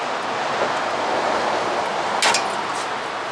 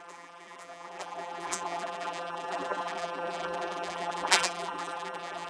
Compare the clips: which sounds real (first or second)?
first